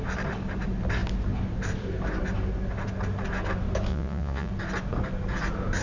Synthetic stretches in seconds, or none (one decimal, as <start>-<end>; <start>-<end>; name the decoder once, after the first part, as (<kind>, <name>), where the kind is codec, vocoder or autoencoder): 3.9-4.5 (vocoder, Vocos)